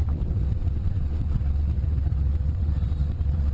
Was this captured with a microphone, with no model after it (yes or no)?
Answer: no